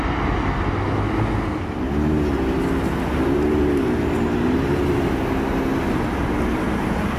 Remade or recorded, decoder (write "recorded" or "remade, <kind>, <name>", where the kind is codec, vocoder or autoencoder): recorded